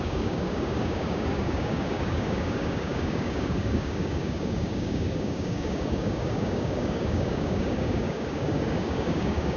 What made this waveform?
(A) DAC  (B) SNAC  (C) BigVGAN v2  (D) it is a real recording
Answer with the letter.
A